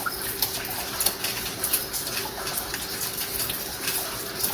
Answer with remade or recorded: remade